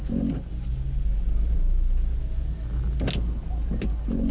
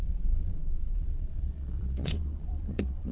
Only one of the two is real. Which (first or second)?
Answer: first